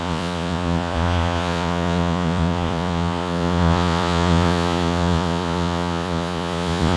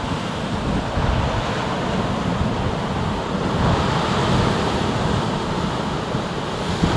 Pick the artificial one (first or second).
first